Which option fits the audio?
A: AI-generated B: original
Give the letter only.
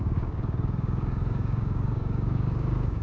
A